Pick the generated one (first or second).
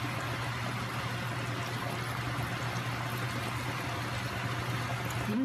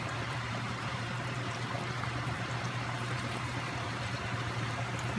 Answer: second